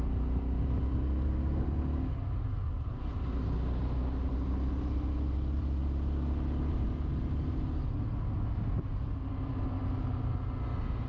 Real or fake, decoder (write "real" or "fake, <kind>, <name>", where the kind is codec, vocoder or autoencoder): real